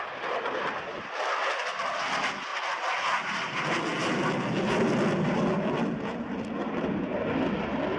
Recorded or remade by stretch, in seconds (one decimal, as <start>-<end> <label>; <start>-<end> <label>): 0.0-8.0 recorded